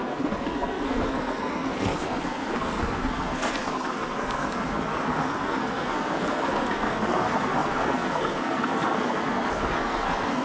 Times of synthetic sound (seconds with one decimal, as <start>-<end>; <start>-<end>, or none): 0.0-10.4